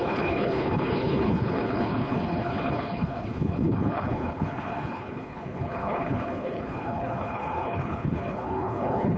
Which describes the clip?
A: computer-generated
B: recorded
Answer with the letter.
A